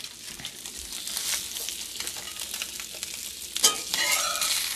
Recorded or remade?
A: recorded